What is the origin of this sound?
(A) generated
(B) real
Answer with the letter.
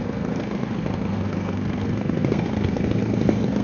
A